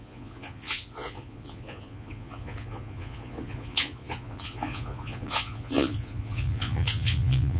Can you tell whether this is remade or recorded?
remade